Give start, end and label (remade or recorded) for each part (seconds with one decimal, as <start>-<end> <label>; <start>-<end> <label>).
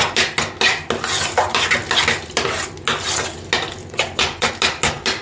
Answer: 0.0-3.8 recorded; 3.8-4.5 remade; 4.5-5.2 recorded